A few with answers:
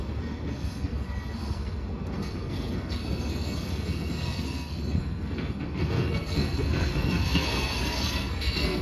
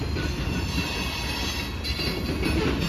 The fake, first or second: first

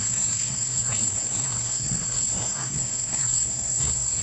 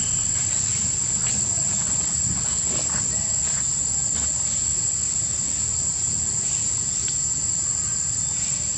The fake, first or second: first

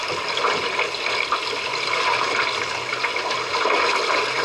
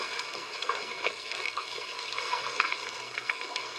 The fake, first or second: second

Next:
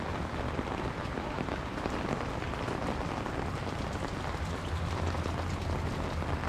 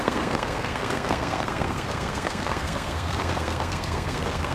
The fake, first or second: second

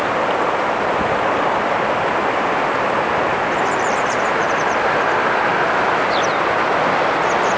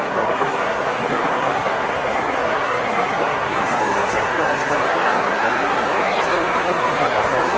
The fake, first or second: second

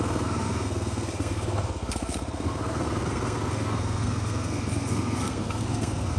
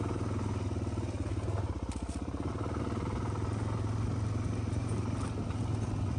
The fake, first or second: first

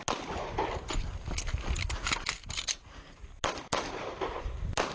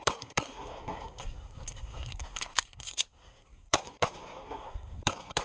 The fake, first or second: second